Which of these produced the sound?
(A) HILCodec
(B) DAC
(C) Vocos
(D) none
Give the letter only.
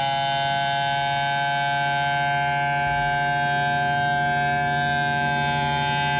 D